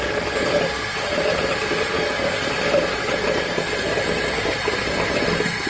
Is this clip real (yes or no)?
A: yes